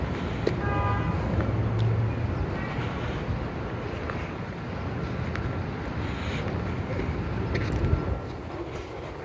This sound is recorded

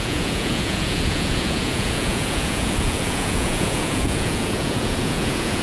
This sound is remade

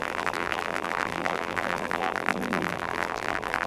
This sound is remade